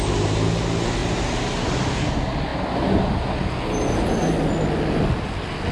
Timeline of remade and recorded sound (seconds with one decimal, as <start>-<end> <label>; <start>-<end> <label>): 0.0-5.7 recorded